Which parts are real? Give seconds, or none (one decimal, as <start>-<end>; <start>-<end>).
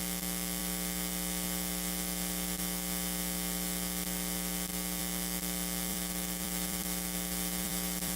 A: 0.0-5.9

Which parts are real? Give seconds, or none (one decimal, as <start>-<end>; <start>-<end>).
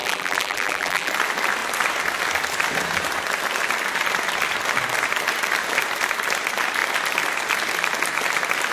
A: 1.1-8.7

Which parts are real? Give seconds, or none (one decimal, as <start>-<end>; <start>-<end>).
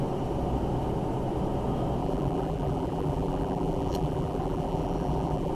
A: 0.0-2.0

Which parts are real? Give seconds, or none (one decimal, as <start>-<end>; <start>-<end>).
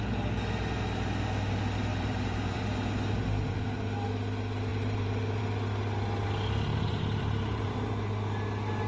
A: 0.0-1.9; 2.6-4.7; 5.4-6.7; 7.9-8.9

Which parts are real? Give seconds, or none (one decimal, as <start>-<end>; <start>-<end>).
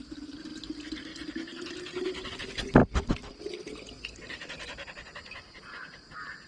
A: 0.0-6.5